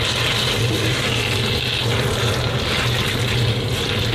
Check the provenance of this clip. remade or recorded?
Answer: recorded